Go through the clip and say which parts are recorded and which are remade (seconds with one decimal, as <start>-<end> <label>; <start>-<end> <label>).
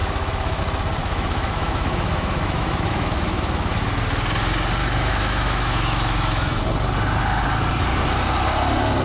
0.0-0.6 remade; 0.6-1.0 recorded; 1.0-4.0 remade; 4.0-4.8 recorded; 4.8-6.6 remade; 6.6-9.0 recorded